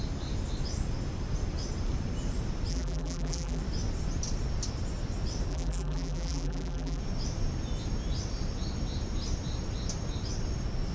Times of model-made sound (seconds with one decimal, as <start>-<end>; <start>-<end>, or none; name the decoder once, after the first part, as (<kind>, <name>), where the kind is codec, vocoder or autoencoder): 2.7-3.6 (vocoder, BigVGAN v2); 5.5-7.0